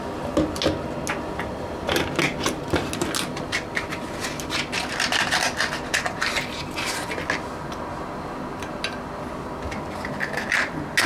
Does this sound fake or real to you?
real